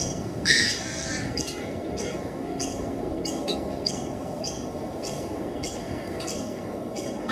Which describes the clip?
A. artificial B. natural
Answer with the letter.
A